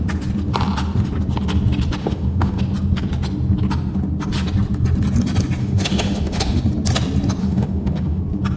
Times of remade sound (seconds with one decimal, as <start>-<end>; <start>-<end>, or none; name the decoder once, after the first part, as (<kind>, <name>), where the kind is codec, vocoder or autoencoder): 2.0-2.6 (autoencoder, DAC-VAE); 5.6-6.6; 7.4-8.2